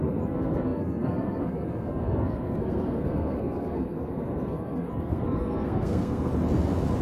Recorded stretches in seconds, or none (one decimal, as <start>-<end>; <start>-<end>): 6.3-7.0